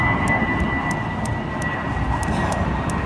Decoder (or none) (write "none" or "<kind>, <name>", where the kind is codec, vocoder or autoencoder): none